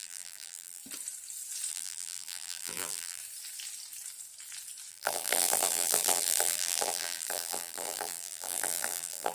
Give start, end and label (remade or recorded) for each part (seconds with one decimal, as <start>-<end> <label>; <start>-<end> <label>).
0.0-0.8 remade; 0.8-1.7 recorded; 1.7-3.2 remade; 3.2-4.9 recorded; 4.9-9.3 remade